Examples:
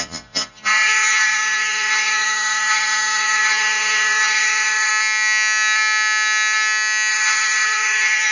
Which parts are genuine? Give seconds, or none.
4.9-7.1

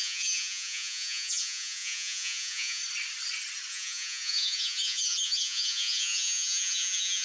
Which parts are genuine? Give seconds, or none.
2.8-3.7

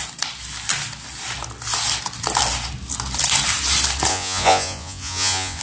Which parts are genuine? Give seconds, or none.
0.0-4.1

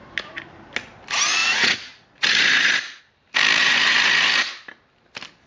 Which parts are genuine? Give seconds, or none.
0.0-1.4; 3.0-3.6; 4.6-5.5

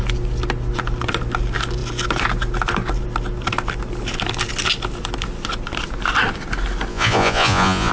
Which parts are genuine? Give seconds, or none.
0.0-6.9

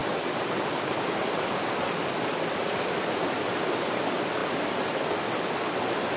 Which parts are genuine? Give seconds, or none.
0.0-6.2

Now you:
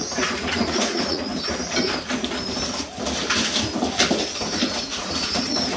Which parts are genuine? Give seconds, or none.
1.3-4.8

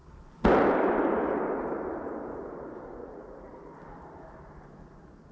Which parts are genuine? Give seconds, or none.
0.0-3.0; 3.7-5.3